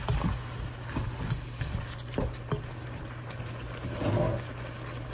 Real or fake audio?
real